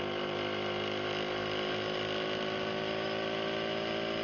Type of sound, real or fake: real